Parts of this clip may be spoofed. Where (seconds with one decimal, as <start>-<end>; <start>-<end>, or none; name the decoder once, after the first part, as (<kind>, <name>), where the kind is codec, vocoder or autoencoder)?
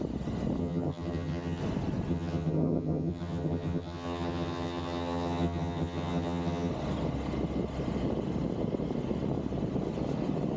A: 0.6-1.6 (vocoder, HiFi-GAN); 2.1-6.7